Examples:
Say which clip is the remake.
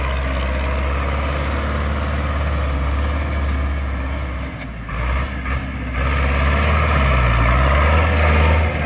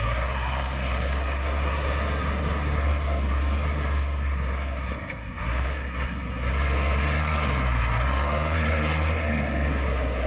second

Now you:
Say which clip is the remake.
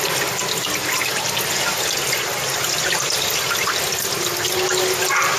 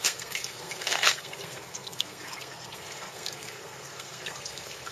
second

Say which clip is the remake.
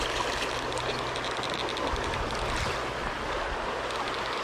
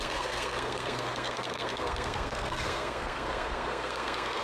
second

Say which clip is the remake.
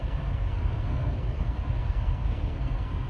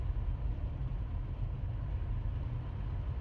first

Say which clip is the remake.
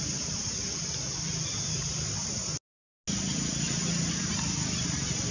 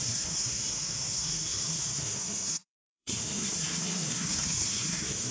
second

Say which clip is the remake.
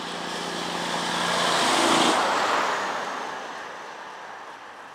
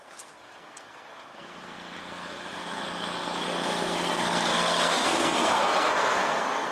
second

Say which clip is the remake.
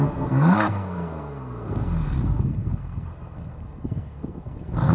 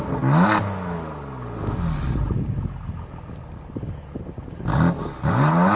first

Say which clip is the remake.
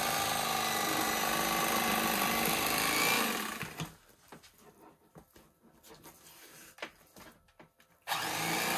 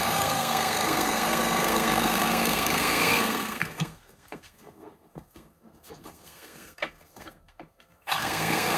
second